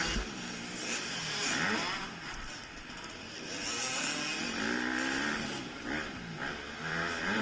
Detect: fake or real real